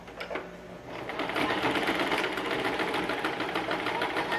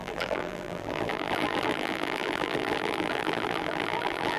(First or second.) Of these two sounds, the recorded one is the first